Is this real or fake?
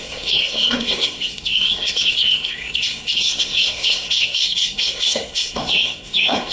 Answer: fake